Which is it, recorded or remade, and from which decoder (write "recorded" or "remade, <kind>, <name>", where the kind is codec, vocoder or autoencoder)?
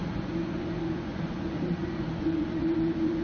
remade, vocoder, Vocos